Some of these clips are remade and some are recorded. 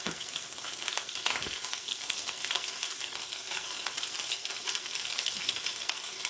remade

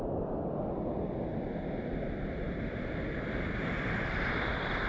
recorded